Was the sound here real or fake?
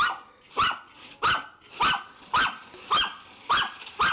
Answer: real